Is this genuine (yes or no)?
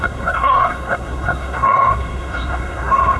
no